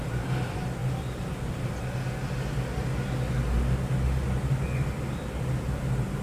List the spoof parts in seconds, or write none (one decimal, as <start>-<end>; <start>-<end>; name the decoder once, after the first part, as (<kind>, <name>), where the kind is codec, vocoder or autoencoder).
none